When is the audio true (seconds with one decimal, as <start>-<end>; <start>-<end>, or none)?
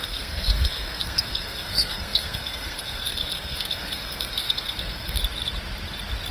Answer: 5.2-6.3